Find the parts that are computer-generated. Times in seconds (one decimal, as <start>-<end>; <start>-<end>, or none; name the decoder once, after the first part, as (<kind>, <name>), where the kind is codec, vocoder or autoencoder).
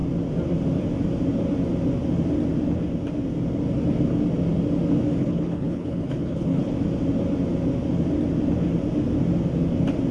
5.2-6.7 (codec, HILCodec)